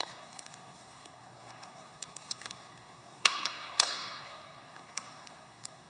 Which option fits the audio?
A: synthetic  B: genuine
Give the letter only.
A